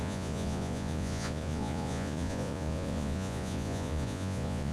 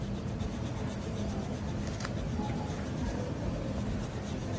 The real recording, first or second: second